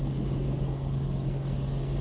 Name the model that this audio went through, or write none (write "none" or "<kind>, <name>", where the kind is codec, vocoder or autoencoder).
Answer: codec, SNAC